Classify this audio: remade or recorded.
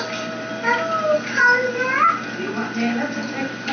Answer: recorded